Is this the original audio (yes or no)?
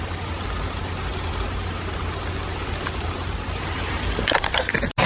yes